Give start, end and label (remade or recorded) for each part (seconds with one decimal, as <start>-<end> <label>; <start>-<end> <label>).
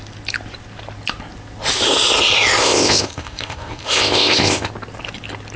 0.0-2.6 recorded; 2.6-4.7 remade; 4.7-5.6 recorded